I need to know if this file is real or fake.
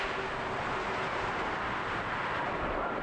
real